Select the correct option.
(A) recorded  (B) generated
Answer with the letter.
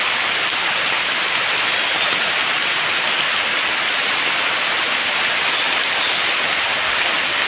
A